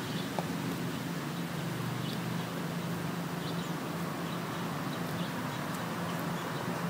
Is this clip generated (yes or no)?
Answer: no